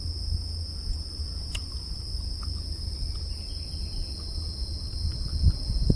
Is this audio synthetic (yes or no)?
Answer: no